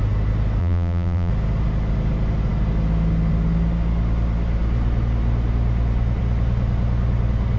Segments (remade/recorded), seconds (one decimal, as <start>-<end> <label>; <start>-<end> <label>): 0.0-0.6 recorded; 0.6-1.3 remade; 1.3-7.6 recorded